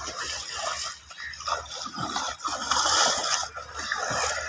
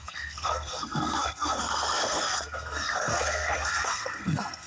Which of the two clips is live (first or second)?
first